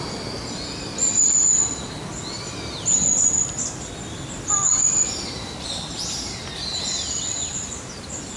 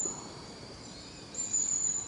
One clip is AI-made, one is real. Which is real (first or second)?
first